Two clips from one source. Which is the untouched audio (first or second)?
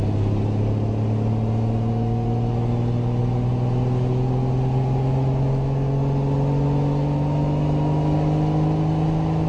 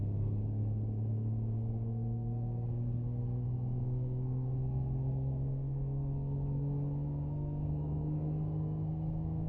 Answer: first